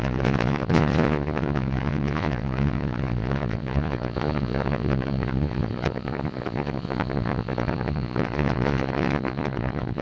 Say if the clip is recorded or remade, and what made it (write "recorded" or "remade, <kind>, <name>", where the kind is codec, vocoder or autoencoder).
remade, vocoder, Vocos